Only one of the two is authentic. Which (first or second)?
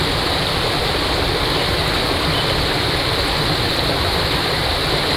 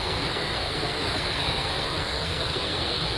first